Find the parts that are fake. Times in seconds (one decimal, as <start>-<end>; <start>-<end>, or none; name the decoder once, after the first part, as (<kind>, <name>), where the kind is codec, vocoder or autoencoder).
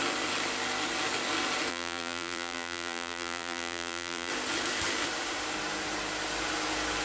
1.7-4.3 (vocoder, BigVGAN v2)